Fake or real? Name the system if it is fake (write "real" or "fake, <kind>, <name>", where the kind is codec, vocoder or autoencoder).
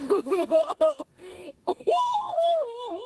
fake, codec, DAC